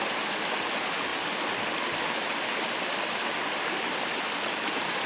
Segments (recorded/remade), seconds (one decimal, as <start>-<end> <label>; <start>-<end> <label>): 0.0-1.1 recorded; 1.1-4.2 remade; 4.2-5.1 recorded